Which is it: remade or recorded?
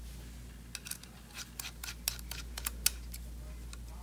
recorded